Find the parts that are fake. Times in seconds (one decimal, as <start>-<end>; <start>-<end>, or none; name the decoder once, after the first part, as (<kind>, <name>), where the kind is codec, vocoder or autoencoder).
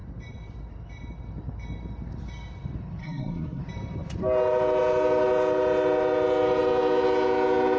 3.0-3.6 (codec, SNAC)